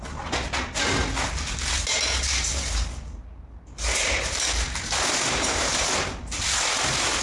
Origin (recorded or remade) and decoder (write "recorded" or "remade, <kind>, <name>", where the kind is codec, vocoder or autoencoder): recorded